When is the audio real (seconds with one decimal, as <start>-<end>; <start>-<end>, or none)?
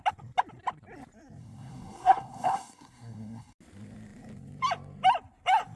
0.0-1.4; 3.6-5.8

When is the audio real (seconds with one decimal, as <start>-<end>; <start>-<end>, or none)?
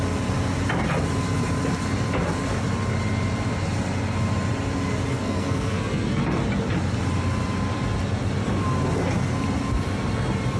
0.0-5.1; 6.2-10.6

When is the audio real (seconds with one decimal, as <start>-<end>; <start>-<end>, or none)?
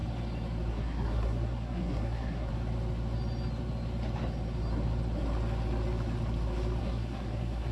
0.0-0.7; 2.5-6.8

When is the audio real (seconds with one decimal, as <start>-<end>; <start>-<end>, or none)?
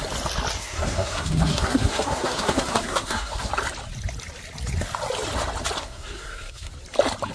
0.0-0.6; 3.5-5.8; 6.7-7.3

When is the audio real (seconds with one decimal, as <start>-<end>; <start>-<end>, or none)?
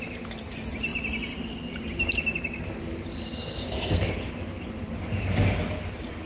0.0-3.1; 4.1-6.3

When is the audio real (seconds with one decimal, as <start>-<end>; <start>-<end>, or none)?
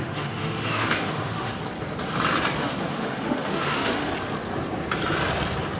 1.5-2.6; 4.1-5.8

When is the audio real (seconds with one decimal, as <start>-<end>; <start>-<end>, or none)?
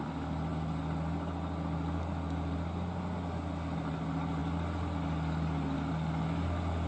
0.0-6.9